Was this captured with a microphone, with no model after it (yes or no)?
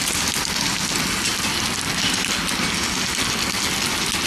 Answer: yes